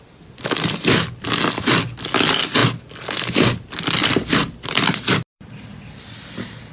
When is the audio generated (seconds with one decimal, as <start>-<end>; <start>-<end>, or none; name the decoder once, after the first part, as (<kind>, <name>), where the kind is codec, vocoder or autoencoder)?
none